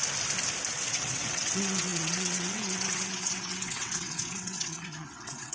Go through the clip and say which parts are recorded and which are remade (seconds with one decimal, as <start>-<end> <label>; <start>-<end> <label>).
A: 0.0-0.7 recorded; 0.7-5.5 remade